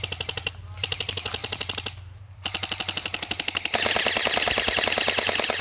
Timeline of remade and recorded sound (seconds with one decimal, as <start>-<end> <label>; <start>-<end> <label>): 0.0-5.6 recorded